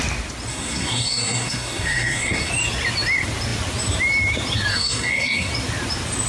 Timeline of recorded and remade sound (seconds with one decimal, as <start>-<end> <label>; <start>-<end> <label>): 0.0-0.5 recorded; 0.5-2.5 remade; 2.5-4.7 recorded; 4.7-5.5 remade; 5.5-6.3 recorded